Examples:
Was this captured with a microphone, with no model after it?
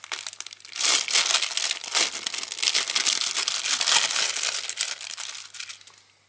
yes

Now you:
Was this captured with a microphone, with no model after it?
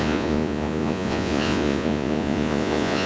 no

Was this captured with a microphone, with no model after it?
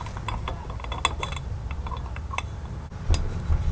yes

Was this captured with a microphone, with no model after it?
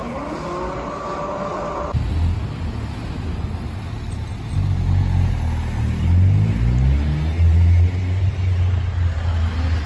yes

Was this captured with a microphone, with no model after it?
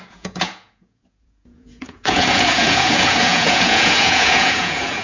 no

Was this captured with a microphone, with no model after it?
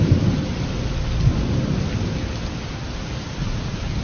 yes